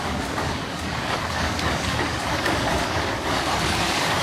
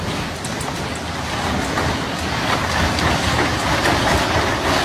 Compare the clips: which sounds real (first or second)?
second